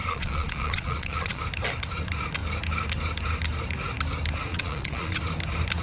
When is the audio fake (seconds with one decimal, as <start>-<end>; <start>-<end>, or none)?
0.0-1.4; 4.5-5.2